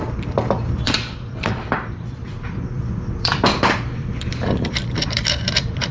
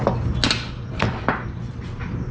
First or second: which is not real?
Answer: first